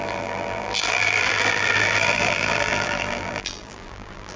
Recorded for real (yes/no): no